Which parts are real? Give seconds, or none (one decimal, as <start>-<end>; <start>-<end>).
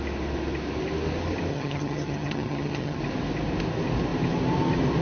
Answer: 0.0-1.5; 3.0-5.0